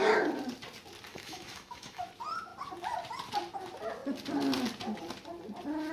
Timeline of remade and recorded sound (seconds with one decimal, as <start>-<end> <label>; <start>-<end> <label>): 0.0-1.1 recorded; 1.1-2.1 remade; 2.1-5.9 recorded